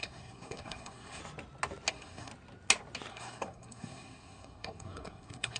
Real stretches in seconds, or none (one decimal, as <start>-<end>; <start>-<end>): 1.2-1.9; 2.3-3.1